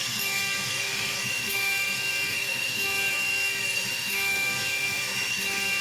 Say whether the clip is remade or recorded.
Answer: remade